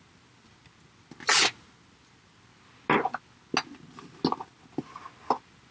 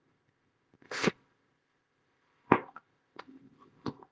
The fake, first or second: second